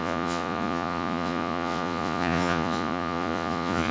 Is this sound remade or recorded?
remade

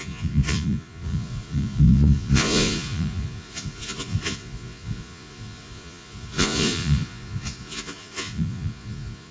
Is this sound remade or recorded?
remade